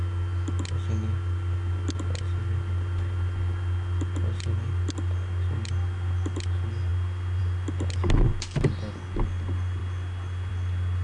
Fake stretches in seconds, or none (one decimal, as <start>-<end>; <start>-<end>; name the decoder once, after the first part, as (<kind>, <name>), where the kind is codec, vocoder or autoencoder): none

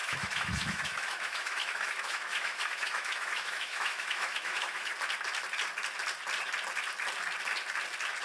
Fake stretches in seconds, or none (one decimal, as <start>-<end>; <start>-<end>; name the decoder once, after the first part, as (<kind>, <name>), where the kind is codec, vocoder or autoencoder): 0.0-4.9 (autoencoder, DAC-VAE)

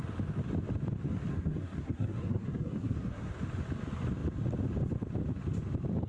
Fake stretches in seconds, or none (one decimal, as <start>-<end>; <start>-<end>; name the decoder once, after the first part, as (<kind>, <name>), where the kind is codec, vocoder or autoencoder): 1.3-3.3 (codec, SNAC)